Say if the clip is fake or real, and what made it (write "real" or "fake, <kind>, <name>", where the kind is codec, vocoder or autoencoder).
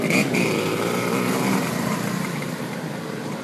fake, vocoder, BigVGAN v2